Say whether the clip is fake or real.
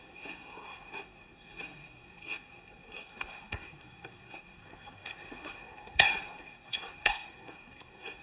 fake